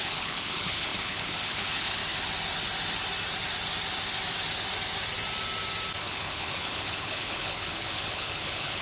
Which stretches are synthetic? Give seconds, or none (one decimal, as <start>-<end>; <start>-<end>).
0.0-2.0; 6.0-8.8

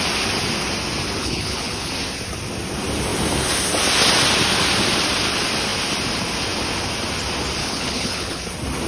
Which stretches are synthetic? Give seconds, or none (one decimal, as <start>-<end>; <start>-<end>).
1.2-1.9; 7.6-8.4

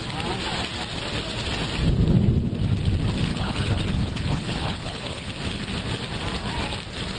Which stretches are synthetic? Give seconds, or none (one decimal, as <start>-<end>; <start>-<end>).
3.3-5.3

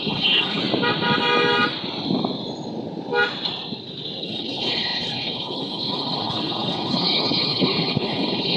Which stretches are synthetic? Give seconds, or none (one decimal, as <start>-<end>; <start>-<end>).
0.0-0.6; 4.2-8.6

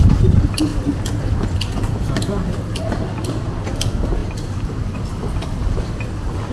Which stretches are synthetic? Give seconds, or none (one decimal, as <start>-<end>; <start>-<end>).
none

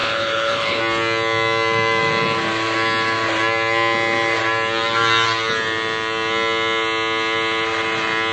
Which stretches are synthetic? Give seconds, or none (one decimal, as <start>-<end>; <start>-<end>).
0.0-0.8

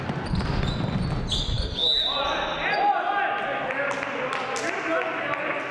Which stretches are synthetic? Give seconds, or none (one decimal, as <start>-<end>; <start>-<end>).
none

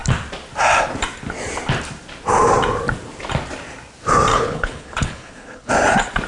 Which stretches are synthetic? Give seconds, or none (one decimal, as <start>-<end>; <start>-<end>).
4.3-5.7